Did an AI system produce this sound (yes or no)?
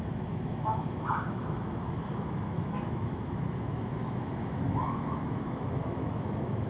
yes